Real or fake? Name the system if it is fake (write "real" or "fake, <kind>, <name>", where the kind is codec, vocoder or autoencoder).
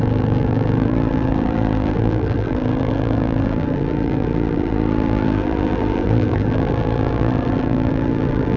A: fake, vocoder, BigVGAN v2